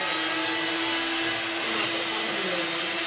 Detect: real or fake real